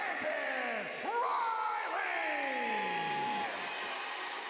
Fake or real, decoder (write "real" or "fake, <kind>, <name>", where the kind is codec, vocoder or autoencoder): real